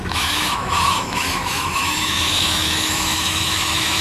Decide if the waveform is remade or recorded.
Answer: remade